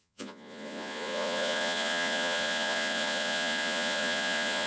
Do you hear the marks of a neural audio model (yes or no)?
yes